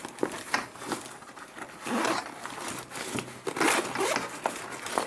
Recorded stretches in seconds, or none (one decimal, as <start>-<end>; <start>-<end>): 0.0-5.1